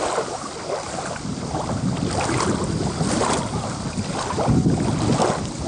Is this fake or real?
real